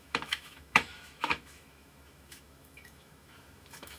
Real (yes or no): no